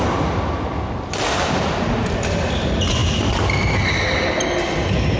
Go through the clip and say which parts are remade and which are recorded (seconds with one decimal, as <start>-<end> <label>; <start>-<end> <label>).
0.0-5.2 recorded